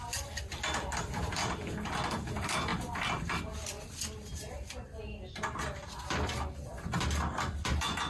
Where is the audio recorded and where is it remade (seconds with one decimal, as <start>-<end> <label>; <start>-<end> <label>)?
0.0-8.1 recorded